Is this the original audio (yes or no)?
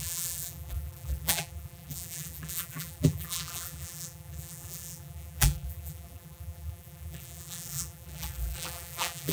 no